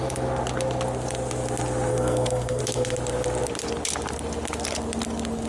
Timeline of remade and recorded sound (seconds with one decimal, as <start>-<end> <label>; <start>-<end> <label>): 0.0-1.9 recorded; 1.9-2.6 remade; 2.6-5.5 recorded